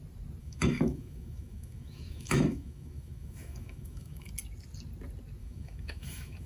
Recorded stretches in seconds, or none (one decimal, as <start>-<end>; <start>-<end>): 0.0-0.4; 4.3-5.4